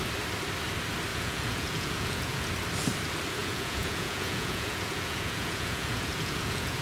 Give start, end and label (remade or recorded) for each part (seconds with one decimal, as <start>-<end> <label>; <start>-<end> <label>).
0.0-1.1 recorded; 1.1-2.5 remade; 2.5-3.4 recorded; 3.4-6.8 remade